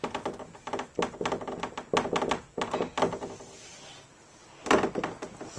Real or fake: real